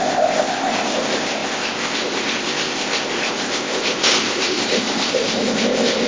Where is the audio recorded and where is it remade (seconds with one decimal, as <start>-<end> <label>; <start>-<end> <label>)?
0.0-6.1 remade